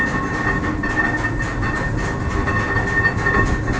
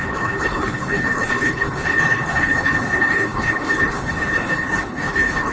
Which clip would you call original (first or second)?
first